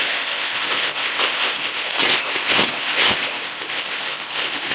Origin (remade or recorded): remade